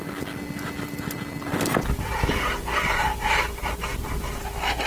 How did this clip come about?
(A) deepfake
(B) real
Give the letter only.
B